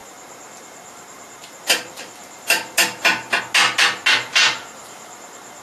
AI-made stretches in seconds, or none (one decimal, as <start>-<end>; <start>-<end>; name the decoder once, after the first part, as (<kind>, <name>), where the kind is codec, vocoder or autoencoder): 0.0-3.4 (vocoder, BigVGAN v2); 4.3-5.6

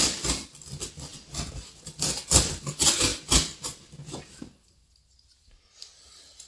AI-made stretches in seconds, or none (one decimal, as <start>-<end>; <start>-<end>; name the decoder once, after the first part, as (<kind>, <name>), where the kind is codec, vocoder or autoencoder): none

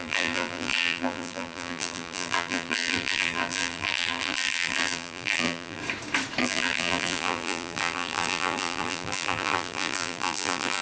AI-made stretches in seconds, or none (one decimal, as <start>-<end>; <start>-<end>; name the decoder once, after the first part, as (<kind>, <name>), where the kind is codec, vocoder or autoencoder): 0.0-5.8 (vocoder, BigVGAN v2); 6.4-10.8